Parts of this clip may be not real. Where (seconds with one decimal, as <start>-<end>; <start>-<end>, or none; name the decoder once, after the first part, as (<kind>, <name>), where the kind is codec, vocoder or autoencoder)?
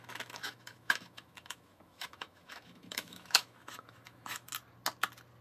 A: 0.0-4.5 (autoencoder, DAC-VAE)